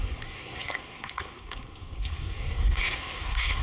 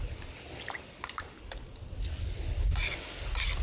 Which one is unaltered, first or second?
second